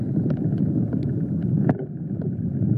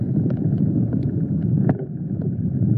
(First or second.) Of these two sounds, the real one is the first